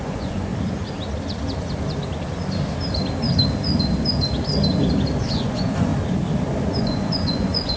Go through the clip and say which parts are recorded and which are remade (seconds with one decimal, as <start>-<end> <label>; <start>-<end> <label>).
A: 0.0-0.5 remade; 0.5-5.2 recorded; 5.2-5.9 remade; 5.9-6.8 recorded; 6.8-7.8 remade